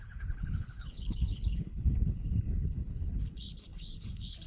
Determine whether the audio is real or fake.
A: fake